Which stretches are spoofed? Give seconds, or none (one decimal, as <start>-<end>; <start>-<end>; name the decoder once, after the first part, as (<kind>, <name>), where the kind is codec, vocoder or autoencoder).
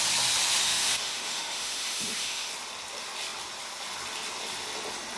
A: 0.6-2.5 (autoencoder, DAC-VAE)